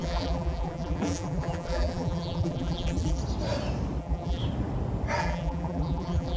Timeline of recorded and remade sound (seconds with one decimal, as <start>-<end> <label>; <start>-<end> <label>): 0.0-3.2 remade; 3.2-4.0 recorded; 4.0-4.4 remade; 4.4-5.2 recorded; 5.2-6.4 remade